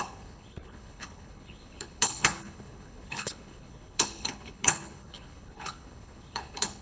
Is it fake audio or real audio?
fake